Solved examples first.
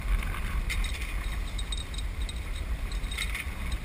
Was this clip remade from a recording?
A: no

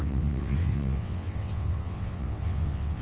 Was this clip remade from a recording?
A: yes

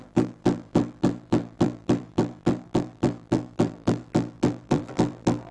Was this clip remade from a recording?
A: yes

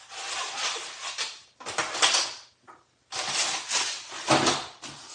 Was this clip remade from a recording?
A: no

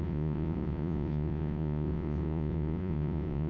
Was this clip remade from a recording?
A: yes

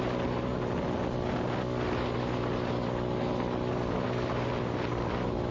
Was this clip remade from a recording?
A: no